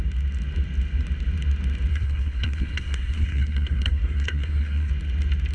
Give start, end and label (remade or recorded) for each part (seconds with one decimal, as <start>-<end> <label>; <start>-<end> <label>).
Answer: 0.0-1.9 recorded; 1.9-4.9 remade; 4.9-5.5 recorded